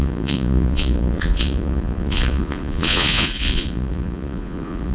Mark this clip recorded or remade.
remade